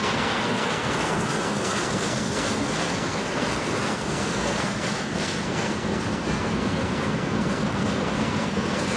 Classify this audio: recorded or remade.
remade